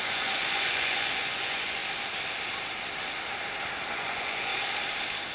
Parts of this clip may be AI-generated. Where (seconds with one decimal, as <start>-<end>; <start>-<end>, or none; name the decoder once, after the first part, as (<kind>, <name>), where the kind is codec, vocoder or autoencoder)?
0.0-1.8 (vocoder, Vocos); 3.9-4.5

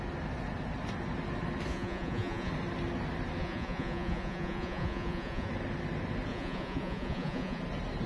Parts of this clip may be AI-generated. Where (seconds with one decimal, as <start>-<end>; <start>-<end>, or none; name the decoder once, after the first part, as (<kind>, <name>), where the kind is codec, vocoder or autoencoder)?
1.7-2.5 (vocoder, Vocos); 3.4-5.5; 6.3-7.6